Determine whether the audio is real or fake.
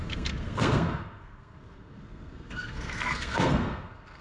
fake